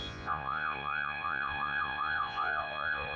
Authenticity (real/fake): fake